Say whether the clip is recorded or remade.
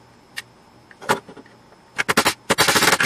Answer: recorded